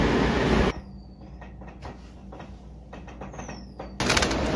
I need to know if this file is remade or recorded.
recorded